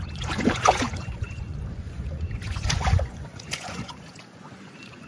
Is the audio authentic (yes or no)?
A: no